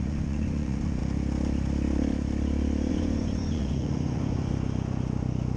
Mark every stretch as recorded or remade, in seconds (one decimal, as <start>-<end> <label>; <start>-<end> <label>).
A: 0.0-1.0 remade; 1.0-2.9 recorded; 2.9-4.5 remade; 4.5-5.6 recorded